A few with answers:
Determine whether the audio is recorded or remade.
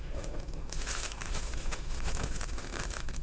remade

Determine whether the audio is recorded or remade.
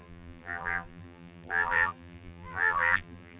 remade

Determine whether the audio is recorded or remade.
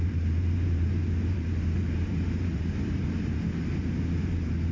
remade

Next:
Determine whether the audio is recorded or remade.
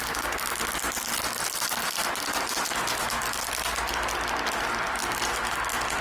recorded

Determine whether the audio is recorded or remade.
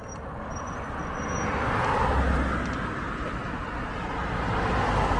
recorded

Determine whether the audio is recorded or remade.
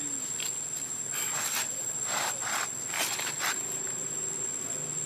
recorded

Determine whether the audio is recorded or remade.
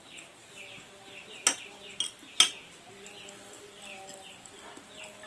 recorded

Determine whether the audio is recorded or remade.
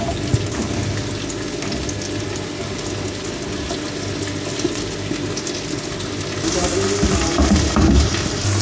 recorded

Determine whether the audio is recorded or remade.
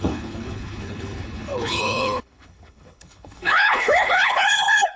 remade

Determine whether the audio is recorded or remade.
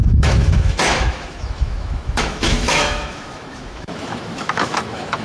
remade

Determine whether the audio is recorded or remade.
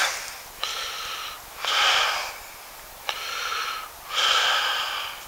recorded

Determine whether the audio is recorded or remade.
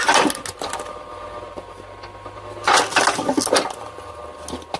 recorded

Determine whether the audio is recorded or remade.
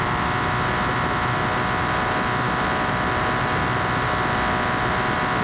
recorded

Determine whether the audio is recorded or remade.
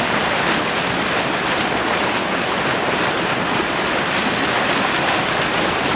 recorded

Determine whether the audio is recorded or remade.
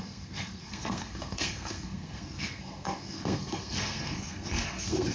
remade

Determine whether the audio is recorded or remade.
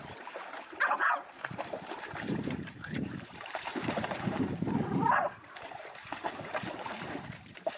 remade